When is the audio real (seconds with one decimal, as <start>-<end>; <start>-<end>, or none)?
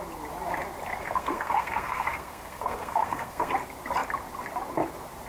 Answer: 0.0-0.9; 3.5-5.3